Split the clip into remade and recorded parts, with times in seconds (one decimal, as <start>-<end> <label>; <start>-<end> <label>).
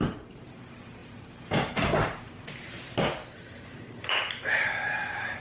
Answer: 0.0-5.4 remade